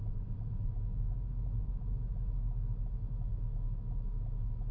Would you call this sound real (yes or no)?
no